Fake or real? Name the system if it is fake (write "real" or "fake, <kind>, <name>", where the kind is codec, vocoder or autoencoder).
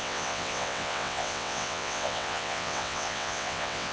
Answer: fake, vocoder, WaveNeXt